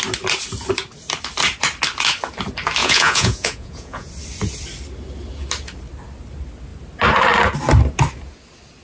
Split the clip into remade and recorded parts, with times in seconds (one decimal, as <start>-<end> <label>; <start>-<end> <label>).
0.0-2.8 recorded; 2.8-4.1 remade; 4.1-8.8 recorded